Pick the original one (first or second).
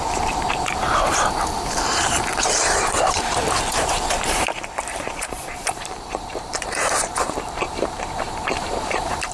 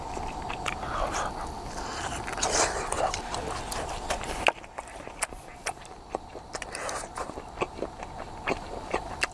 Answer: second